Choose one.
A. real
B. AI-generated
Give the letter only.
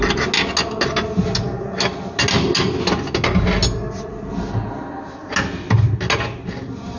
A